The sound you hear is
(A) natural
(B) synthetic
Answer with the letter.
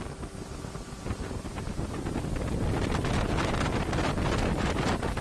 A